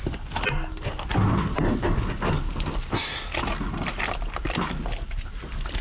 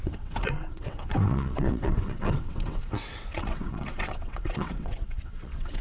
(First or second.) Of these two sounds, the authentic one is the first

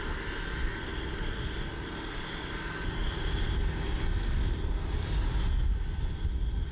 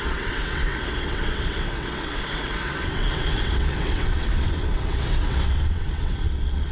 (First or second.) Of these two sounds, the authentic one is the first